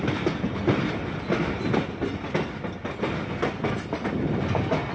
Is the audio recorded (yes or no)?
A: yes